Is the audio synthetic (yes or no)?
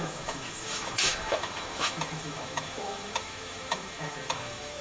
yes